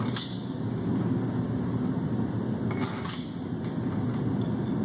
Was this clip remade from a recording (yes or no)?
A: no